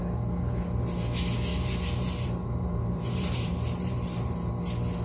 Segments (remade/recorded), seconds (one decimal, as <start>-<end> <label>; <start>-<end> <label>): 0.0-1.5 recorded; 1.5-4.5 remade; 4.5-5.0 recorded